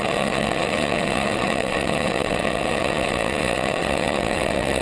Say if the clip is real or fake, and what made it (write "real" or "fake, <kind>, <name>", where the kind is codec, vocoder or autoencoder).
fake, vocoder, WaveNeXt